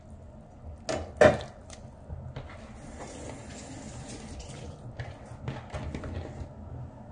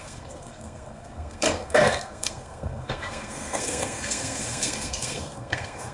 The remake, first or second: second